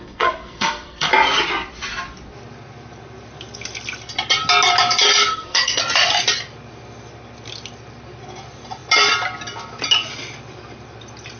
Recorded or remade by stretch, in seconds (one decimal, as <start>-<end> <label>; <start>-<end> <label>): 0.0-1.1 remade; 1.1-5.2 recorded; 5.2-5.8 remade; 5.8-11.4 recorded